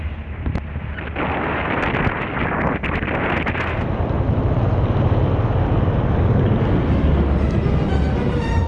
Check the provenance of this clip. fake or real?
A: real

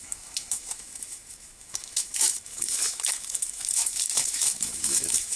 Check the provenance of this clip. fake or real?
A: fake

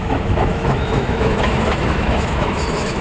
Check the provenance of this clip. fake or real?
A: fake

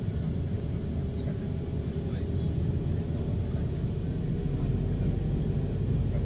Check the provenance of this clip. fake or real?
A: real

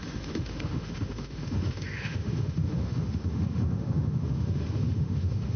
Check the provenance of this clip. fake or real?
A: fake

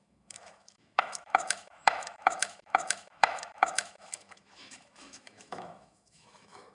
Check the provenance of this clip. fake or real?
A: fake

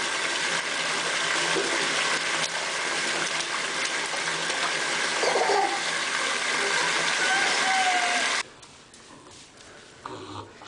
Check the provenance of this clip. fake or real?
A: real